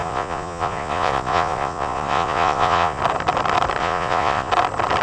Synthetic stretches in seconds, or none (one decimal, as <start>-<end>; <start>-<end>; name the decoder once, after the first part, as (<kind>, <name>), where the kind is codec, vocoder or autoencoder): 0.0-3.0 (vocoder, Vocos); 3.8-4.5

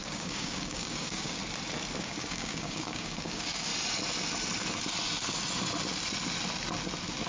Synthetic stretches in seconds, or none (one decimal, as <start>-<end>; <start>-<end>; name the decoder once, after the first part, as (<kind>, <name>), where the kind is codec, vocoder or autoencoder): 0.0-1.4 (codec, DAC); 2.0-3.7